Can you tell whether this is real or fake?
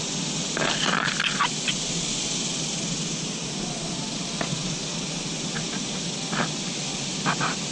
real